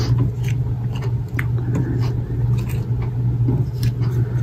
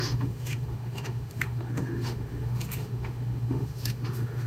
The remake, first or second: second